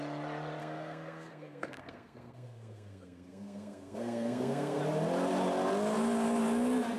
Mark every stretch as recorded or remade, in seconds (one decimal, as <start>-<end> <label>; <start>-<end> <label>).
0.0-0.6 recorded; 0.6-4.8 remade; 4.8-7.0 recorded